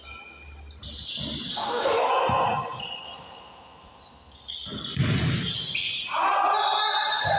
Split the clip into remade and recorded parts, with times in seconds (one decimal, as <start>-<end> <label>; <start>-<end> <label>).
0.0-1.5 recorded; 1.5-2.1 remade; 2.1-7.4 recorded